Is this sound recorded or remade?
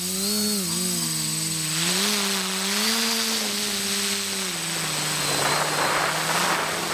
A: recorded